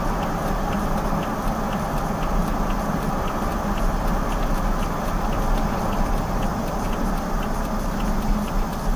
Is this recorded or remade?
recorded